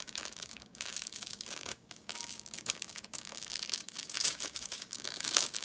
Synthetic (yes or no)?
yes